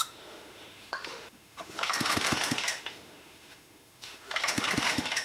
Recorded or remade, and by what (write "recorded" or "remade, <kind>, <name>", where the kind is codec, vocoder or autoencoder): remade, autoencoder, DAC-VAE